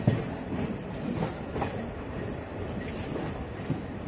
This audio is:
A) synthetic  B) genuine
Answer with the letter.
B